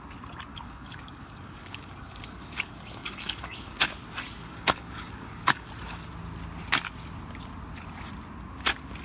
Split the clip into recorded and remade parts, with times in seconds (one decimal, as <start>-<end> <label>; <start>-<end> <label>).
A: 0.0-0.5 recorded; 0.5-3.8 remade; 3.8-4.4 recorded; 4.4-5.7 remade; 5.7-9.0 recorded

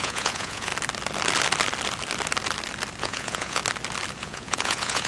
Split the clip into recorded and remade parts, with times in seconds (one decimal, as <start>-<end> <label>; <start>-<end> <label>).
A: 0.0-0.7 remade; 0.7-3.0 recorded; 3.0-3.6 remade; 3.6-4.2 recorded; 4.2-5.1 remade

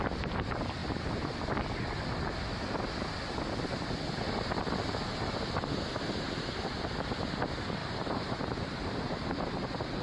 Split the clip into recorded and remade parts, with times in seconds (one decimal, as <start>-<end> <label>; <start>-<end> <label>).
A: 0.0-0.8 recorded; 0.8-1.4 remade; 1.4-7.8 recorded; 7.8-8.4 remade; 8.4-10.0 recorded

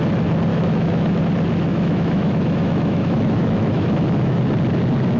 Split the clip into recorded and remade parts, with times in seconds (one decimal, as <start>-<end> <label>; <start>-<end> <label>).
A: 0.0-0.5 recorded; 0.5-1.2 remade; 1.2-1.7 recorded; 1.7-4.4 remade; 4.4-5.2 recorded

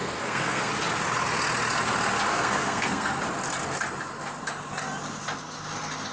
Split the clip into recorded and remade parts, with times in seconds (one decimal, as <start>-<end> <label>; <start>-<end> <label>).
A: 0.0-0.7 remade; 0.7-2.3 recorded; 2.3-3.2 remade; 3.2-6.1 recorded

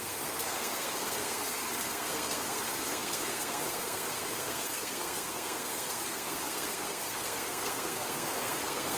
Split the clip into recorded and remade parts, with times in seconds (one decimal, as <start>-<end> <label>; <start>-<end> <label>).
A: 0.0-9.0 remade

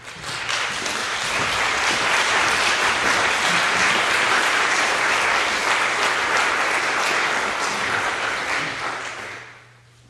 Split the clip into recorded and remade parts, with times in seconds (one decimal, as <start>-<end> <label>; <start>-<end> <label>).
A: 0.0-1.0 recorded; 1.0-5.2 remade; 5.2-10.1 recorded

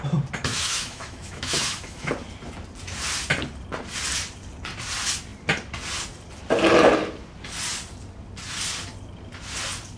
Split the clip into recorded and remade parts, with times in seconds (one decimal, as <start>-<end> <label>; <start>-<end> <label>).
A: 0.0-0.5 recorded; 0.5-2.1 remade; 2.1-10.0 recorded